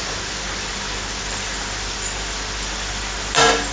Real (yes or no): yes